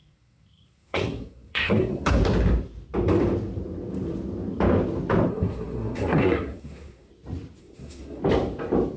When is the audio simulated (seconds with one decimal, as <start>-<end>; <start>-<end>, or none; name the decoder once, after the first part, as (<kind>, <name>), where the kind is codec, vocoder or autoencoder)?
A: 0.0-2.2 (codec, SNAC); 5.3-7.1; 7.6-8.2

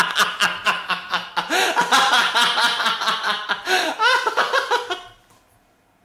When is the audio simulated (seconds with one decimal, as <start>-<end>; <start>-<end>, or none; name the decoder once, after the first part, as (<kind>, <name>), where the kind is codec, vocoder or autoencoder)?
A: none

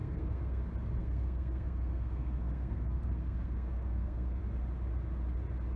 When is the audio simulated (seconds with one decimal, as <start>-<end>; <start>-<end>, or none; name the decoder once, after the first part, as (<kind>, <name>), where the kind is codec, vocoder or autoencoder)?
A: 0.0-0.6 (codec, SNAC); 1.0-4.4

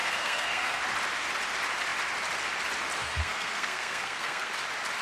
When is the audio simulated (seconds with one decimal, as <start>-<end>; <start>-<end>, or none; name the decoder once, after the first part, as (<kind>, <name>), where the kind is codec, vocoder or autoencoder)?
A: 0.0-0.8 (codec, SNAC); 3.0-4.5

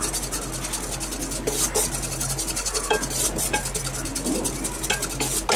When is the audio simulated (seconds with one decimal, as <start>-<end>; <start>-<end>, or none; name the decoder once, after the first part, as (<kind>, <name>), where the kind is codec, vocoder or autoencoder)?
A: none

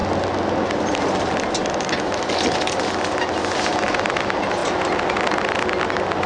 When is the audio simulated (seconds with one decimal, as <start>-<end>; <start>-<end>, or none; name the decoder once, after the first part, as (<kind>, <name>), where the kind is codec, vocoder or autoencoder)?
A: none

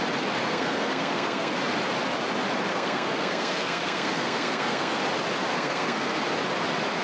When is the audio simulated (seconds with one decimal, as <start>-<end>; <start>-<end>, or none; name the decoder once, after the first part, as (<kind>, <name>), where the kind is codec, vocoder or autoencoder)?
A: 0.4-1.5 (codec, SNAC); 2.7-5.0; 5.5-6.2

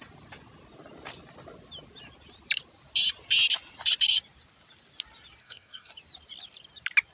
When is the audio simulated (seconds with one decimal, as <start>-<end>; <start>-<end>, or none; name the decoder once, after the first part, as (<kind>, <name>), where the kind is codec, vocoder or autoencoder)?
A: 5.4-5.9 (codec, SNAC)